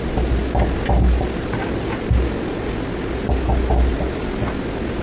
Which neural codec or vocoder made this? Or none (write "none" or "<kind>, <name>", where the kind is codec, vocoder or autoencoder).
none